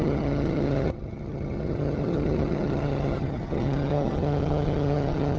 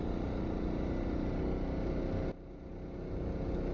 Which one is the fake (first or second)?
first